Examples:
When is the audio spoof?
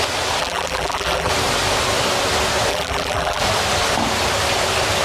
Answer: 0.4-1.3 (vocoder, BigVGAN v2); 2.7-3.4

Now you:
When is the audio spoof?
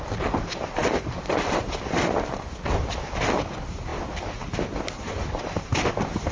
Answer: 0.8-2.7 (vocoder, BigVGAN v2)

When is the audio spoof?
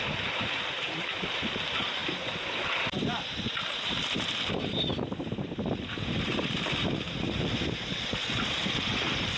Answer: 0.0-9.4 (vocoder, BigVGAN v2)